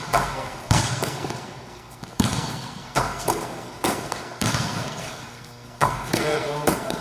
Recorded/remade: remade